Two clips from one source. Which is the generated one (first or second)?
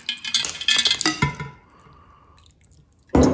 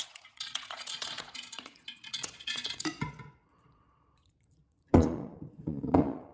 second